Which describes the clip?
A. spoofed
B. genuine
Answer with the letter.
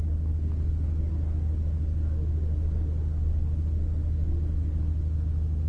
B